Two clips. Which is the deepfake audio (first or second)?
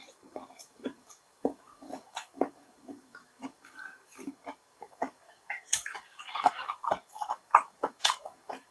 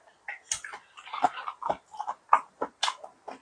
first